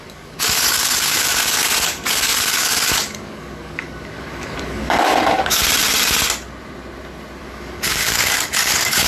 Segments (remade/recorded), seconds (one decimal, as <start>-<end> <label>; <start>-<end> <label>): 0.0-5.6 remade; 5.6-7.4 recorded; 7.4-9.1 remade